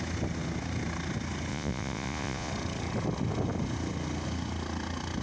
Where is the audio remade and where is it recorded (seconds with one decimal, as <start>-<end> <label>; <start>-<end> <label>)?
0.0-1.5 recorded; 1.5-2.5 remade; 2.5-5.2 recorded